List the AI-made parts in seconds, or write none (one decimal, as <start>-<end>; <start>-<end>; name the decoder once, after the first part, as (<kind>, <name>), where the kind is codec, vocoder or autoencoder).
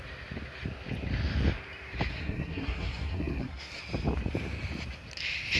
2.1-3.8 (codec, SNAC)